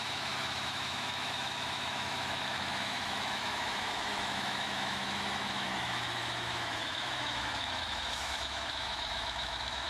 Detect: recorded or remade remade